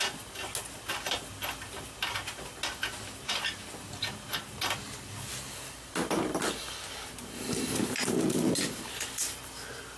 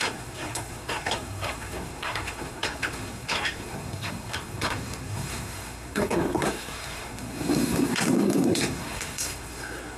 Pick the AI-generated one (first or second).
second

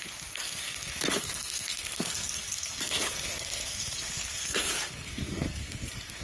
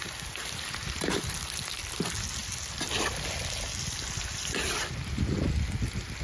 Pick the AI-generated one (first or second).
first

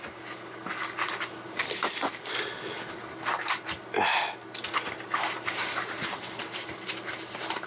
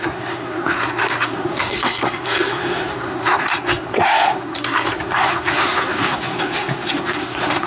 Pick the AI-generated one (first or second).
second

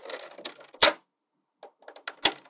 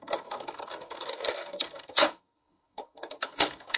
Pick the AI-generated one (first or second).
second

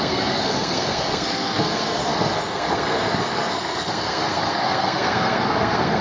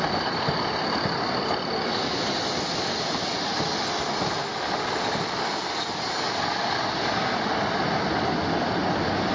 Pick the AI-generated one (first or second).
first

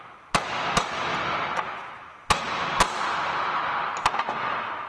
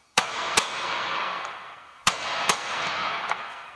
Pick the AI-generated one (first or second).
second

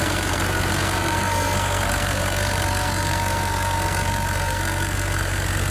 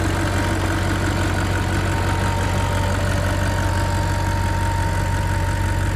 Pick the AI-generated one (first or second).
first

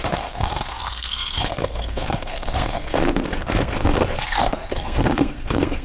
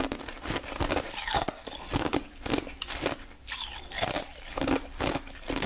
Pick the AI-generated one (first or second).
first